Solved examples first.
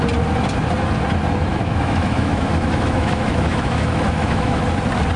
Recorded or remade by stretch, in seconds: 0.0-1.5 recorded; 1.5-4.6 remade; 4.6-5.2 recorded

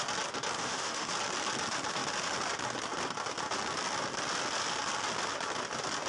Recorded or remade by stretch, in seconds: 0.0-0.6 recorded; 0.6-1.1 remade; 1.1-6.1 recorded

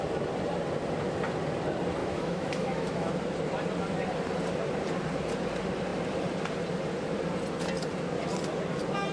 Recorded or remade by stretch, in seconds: 0.0-2.0 recorded; 2.0-3.1 remade; 3.1-9.1 recorded